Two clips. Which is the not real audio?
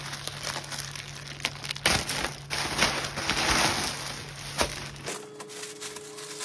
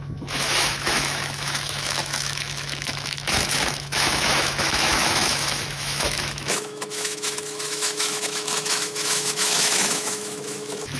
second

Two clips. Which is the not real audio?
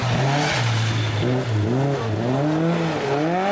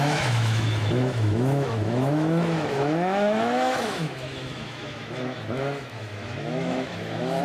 second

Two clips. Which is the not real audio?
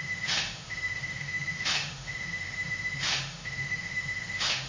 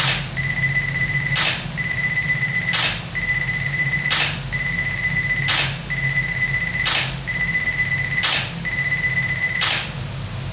first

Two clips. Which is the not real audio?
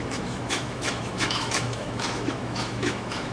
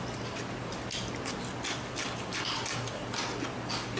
first